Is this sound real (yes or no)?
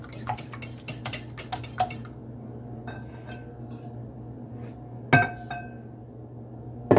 yes